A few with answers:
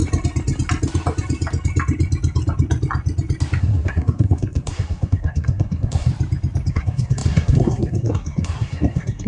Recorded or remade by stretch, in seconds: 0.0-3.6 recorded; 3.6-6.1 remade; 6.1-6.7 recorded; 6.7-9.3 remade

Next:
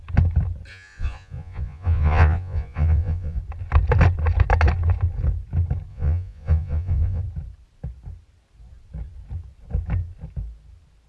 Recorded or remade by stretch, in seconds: 0.0-0.7 recorded; 0.7-3.4 remade; 3.4-5.9 recorded; 5.9-7.2 remade; 7.2-11.1 recorded

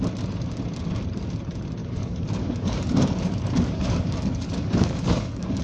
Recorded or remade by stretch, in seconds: 0.0-1.8 recorded; 1.8-5.6 remade

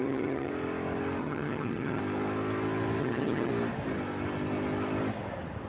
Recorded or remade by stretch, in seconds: 0.0-0.5 remade; 0.5-1.2 recorded; 1.2-2.0 remade; 2.0-3.0 recorded; 3.0-3.5 remade; 3.5-5.7 recorded

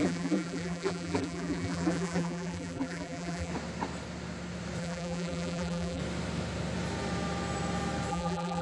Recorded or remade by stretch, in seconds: 0.0-3.5 remade; 3.5-4.8 recorded; 4.8-6.0 remade; 6.0-8.1 recorded; 8.1-8.6 remade

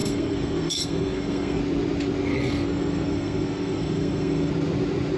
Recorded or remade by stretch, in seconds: 0.0-1.6 remade; 1.6-2.3 recorded; 2.3-4.5 remade; 4.5-5.2 recorded